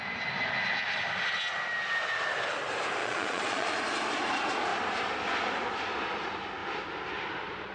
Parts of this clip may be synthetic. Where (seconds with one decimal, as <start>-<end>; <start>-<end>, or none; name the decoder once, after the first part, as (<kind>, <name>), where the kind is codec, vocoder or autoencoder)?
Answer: 3.0-3.7 (vocoder, Vocos)